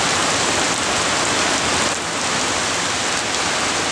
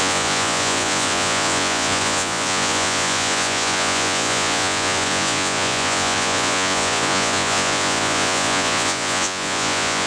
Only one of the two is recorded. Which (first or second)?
first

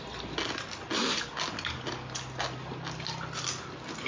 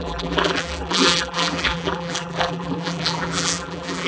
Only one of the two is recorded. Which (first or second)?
first